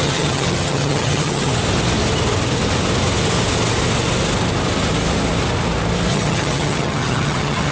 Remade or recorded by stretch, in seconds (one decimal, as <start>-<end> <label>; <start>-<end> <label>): 0.0-1.5 remade; 1.5-6.1 recorded; 6.1-7.7 remade